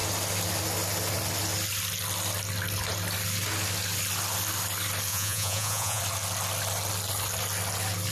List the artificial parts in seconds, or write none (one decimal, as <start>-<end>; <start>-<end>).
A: 5.1-6.0